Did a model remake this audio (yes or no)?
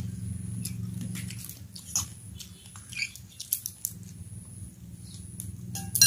no